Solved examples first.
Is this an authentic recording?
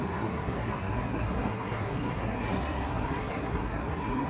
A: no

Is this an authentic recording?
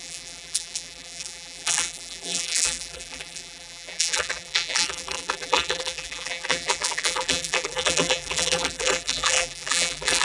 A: no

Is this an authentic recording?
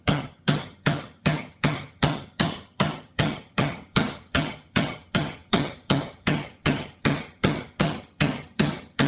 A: no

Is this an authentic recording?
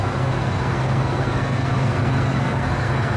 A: no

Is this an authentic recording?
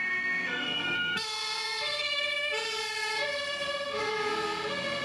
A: no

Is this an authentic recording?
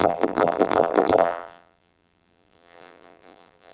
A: no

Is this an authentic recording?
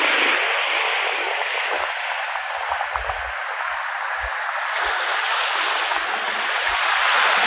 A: yes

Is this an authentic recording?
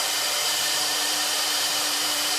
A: no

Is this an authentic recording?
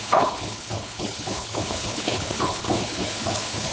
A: no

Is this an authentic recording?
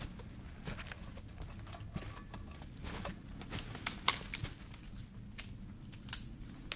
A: yes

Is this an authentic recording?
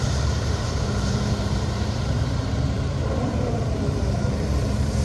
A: no